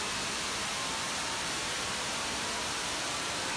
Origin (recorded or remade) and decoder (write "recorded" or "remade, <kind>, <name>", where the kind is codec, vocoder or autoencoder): remade, vocoder, BigVGAN v2